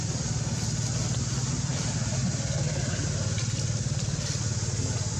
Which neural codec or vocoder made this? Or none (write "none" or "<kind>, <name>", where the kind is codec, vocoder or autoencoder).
none